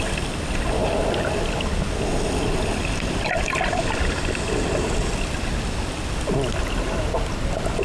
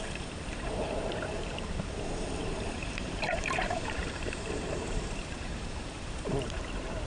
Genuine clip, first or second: first